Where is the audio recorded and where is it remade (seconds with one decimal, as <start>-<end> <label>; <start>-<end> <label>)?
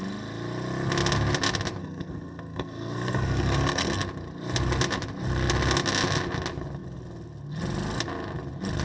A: 0.0-1.8 recorded; 1.8-4.0 remade; 4.0-8.8 recorded